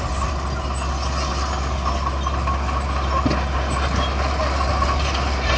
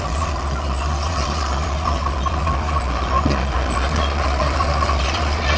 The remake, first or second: second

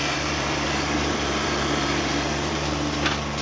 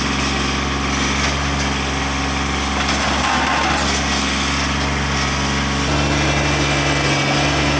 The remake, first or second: first